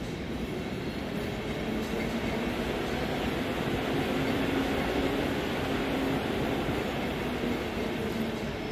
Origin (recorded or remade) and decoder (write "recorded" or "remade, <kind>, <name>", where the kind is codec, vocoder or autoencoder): recorded